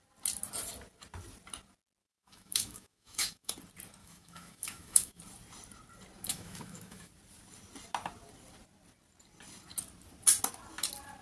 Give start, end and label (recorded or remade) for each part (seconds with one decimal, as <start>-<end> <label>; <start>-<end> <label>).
0.0-2.0 recorded; 2.0-3.5 remade; 3.5-4.0 recorded; 4.0-5.2 remade; 5.2-6.3 recorded; 6.3-7.1 remade; 7.1-11.2 recorded